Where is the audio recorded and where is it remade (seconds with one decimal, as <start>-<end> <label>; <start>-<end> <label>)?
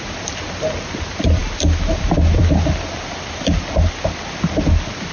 0.0-5.1 recorded